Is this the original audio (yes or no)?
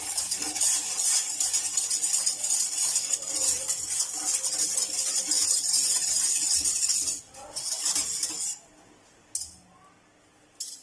yes